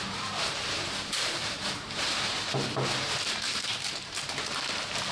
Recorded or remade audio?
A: remade